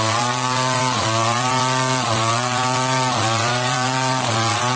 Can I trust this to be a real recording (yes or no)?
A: no